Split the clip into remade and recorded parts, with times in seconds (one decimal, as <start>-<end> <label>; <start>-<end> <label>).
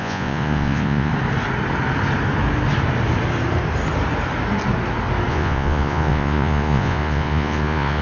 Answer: 0.0-1.1 remade; 1.1-5.3 recorded; 5.3-8.0 remade